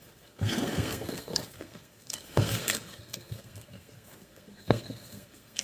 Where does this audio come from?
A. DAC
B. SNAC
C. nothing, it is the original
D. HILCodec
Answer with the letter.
B